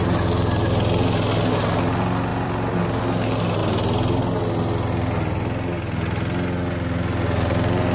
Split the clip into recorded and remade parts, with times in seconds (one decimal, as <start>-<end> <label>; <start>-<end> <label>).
0.0-2.3 recorded; 2.3-3.0 remade; 3.0-7.9 recorded